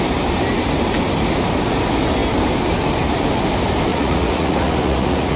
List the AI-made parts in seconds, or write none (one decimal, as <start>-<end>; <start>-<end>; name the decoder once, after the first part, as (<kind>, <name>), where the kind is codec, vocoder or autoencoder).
3.9-5.4 (vocoder, Vocos)